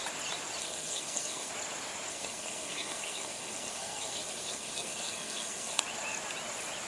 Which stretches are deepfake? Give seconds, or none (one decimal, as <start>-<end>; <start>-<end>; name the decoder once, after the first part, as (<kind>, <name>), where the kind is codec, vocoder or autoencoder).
0.6-1.5 (codec, SNAC); 2.1-5.8

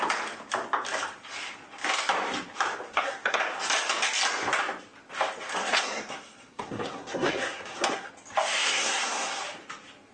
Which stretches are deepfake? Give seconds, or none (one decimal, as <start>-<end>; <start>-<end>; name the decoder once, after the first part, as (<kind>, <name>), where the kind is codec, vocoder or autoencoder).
2.9-3.4 (codec, SNAC); 5.6-8.1; 8.6-9.4

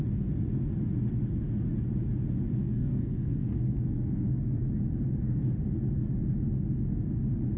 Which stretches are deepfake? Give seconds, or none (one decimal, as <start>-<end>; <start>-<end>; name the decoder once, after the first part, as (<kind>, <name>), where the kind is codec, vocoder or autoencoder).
2.6-4.7 (codec, SNAC)

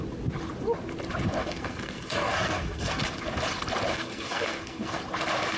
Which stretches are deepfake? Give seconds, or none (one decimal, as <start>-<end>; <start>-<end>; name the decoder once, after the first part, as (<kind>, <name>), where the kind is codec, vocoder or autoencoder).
1.4-3.0 (codec, SNAC); 3.9-5.0

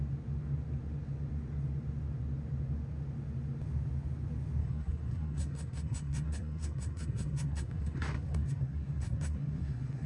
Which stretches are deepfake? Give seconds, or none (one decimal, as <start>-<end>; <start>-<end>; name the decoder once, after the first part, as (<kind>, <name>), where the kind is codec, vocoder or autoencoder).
4.6-10.1 (codec, SNAC)